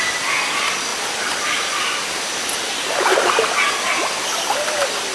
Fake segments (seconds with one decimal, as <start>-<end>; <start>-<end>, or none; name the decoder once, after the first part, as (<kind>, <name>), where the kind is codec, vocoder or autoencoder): none